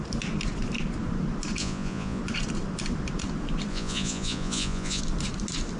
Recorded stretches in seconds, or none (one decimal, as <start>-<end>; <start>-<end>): 0.0-1.6; 2.2-3.7; 5.0-5.8